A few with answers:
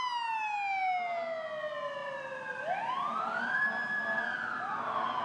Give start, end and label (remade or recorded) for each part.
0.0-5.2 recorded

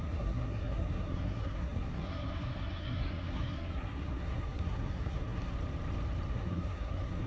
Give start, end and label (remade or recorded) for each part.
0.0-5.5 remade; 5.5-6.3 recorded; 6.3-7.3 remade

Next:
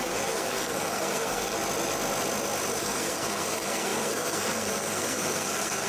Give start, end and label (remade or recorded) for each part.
0.0-1.5 remade; 1.5-2.8 recorded; 2.8-5.9 remade

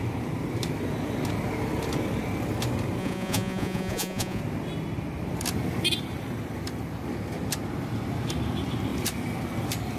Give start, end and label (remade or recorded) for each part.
0.0-3.0 recorded; 3.0-4.4 remade; 4.4-10.0 recorded

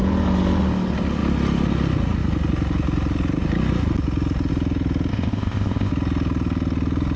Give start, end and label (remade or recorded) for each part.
0.0-5.1 recorded; 5.1-5.9 remade; 5.9-7.2 recorded

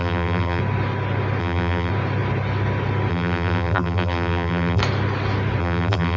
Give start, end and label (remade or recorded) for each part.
0.0-0.6 remade; 0.6-1.4 recorded; 1.4-1.9 remade; 1.9-3.1 recorded; 3.1-4.8 remade; 4.8-5.6 recorded; 5.6-6.2 remade

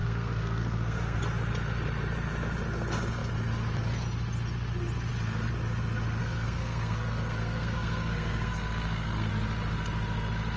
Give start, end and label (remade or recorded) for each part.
0.0-1.2 remade; 1.2-6.2 recorded; 6.2-9.3 remade; 9.3-10.6 recorded

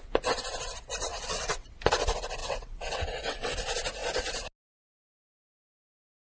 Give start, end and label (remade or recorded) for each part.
0.0-1.1 recorded; 1.1-1.7 remade; 1.7-2.4 recorded; 2.4-3.5 remade; 3.5-6.2 recorded